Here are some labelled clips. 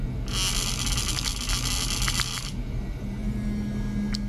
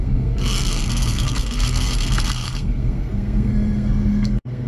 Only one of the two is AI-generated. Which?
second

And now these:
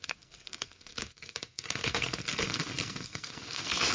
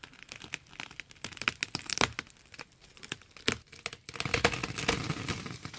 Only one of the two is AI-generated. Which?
first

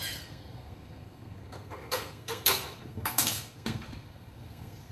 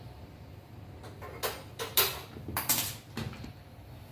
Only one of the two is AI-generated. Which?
first